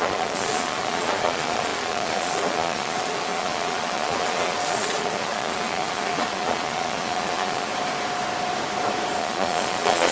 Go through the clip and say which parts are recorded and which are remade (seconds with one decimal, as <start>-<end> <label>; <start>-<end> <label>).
0.0-7.7 remade; 7.7-9.2 recorded; 9.2-10.1 remade